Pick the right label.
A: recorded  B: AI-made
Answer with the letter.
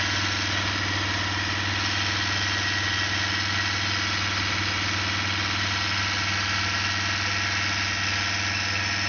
A